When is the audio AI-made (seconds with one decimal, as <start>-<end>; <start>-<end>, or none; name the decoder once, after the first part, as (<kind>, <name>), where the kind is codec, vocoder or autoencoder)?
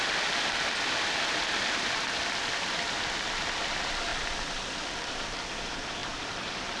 4.1-5.3 (vocoder, BigVGAN v2); 6.0-6.8